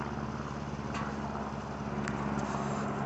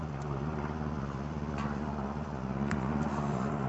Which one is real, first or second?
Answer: first